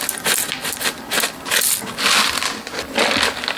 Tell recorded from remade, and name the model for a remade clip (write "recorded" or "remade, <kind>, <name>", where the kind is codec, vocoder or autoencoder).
recorded